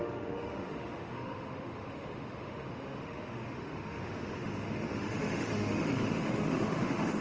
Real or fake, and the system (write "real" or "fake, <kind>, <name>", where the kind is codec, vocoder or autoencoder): fake, autoencoder, DAC-VAE